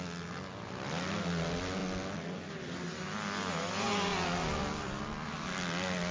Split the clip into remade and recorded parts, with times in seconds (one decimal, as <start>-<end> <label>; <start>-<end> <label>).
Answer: 0.0-6.1 recorded